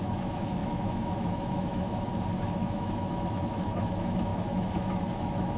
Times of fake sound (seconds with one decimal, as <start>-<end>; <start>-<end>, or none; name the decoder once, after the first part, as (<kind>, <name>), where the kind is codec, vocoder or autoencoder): 0.0-2.1 (autoencoder, DAC-VAE); 2.6-5.6